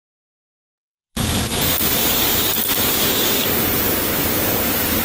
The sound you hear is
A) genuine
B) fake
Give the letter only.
B